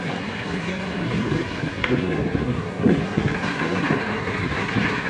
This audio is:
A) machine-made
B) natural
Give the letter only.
A